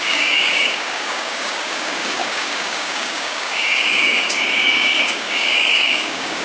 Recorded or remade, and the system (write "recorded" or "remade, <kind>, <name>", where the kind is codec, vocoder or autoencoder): remade, codec, DAC